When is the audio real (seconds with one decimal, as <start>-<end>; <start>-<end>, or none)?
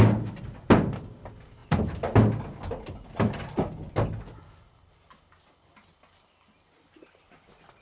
0.0-7.8